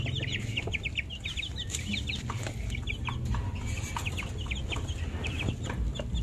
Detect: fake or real real